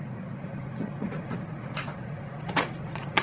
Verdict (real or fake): fake